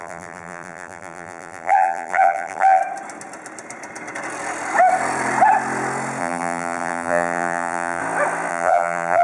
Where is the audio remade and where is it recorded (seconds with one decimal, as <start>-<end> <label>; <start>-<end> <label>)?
0.0-2.8 remade; 2.8-6.2 recorded; 6.2-8.0 remade; 8.0-8.5 recorded; 8.5-9.2 remade